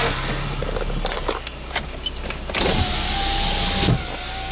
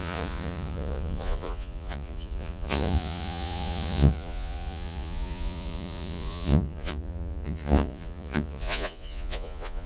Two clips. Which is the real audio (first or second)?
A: first